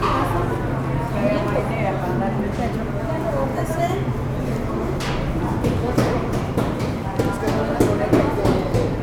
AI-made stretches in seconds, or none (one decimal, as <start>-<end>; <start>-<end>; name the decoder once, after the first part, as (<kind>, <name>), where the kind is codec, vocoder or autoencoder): 1.3-1.9 (vocoder, BigVGAN v2); 3.5-7.2